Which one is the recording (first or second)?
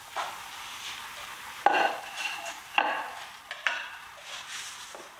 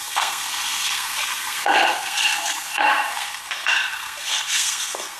first